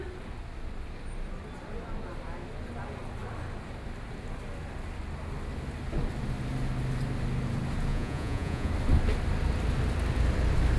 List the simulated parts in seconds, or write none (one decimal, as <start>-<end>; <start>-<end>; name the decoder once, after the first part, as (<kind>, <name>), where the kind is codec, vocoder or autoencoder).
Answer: 7.9-8.7 (vocoder, Vocos)